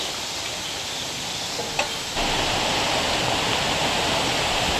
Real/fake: real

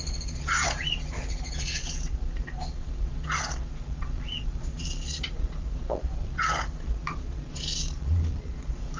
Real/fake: fake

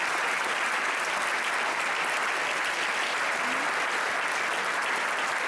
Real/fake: real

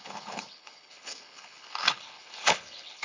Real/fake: fake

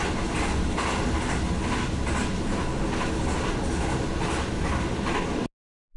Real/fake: real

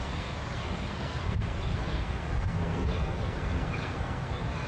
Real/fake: fake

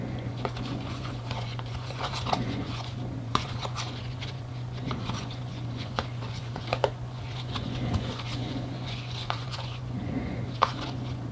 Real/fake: fake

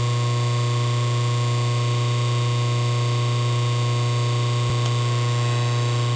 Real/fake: real